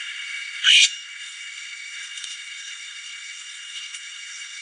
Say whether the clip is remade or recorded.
remade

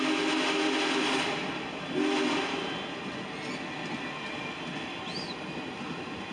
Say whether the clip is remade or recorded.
recorded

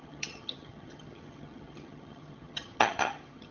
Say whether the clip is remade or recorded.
remade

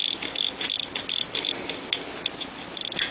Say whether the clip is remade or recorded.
recorded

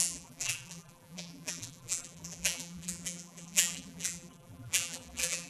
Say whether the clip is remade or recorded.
remade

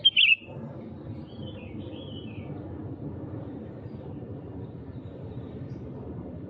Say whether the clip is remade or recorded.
remade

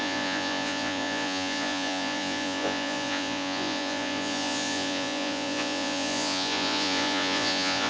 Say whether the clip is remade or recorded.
remade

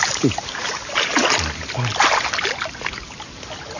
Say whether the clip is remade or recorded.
recorded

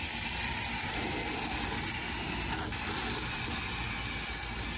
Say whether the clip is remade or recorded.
recorded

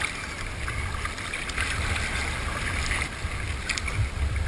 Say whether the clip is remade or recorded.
recorded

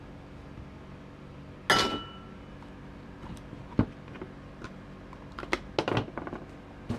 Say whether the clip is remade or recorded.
recorded